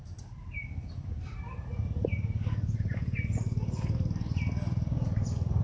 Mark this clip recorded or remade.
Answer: recorded